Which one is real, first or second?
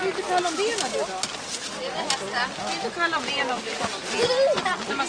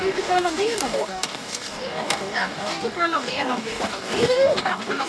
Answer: first